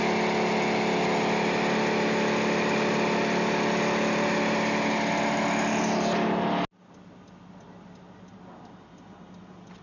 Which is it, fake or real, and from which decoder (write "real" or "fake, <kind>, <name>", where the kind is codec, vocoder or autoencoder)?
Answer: real